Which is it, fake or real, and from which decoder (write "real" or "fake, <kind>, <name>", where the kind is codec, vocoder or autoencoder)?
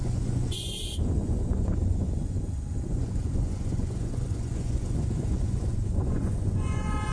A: fake, vocoder, Vocos